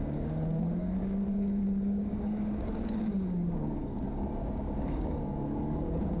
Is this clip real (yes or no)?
no